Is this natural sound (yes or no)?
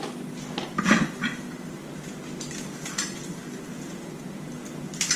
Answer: yes